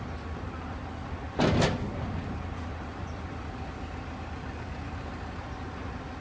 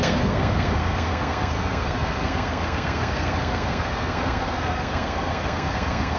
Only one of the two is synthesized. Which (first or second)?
second